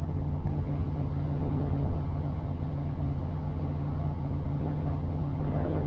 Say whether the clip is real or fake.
fake